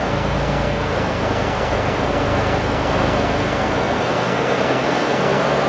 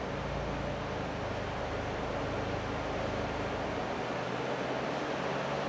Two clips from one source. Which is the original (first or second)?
second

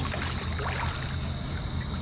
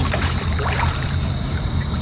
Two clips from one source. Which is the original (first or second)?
first